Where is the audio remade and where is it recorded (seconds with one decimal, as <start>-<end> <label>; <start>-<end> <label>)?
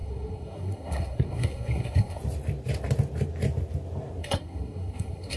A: 0.0-2.2 remade; 2.2-4.2 recorded; 4.2-5.4 remade